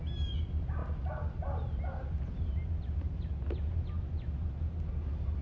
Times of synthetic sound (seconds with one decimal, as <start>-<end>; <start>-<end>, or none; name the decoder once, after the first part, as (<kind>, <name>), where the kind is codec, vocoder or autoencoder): none